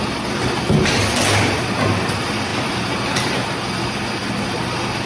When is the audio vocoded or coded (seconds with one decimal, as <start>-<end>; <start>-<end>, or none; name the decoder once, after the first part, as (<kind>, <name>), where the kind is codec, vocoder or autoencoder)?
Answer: none